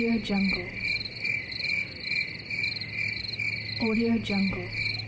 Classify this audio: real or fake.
real